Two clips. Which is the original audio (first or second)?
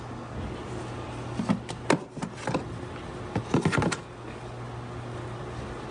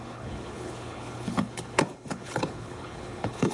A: first